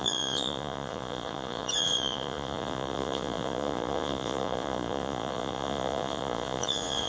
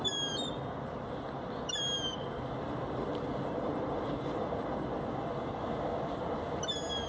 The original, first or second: second